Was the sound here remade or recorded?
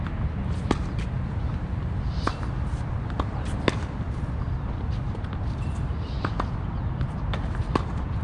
recorded